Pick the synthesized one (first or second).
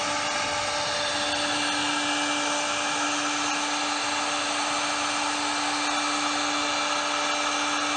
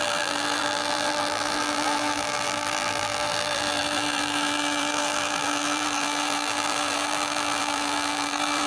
second